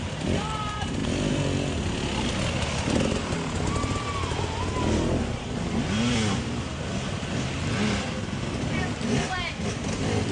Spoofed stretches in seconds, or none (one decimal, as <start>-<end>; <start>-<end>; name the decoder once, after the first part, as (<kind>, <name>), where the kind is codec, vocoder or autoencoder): none